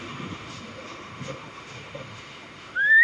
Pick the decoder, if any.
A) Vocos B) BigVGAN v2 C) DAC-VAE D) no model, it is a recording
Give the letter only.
C